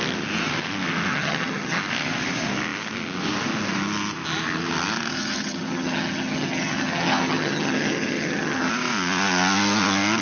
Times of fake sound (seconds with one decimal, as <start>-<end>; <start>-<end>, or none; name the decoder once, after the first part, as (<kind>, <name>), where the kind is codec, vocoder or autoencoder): 1.1-1.8 (vocoder, HiFi-GAN); 5.1-8.7